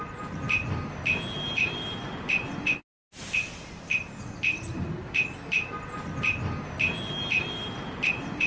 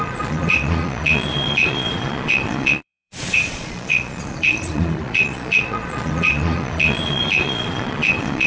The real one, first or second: first